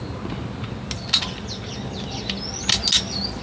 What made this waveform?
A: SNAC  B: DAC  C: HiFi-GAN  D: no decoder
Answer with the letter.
D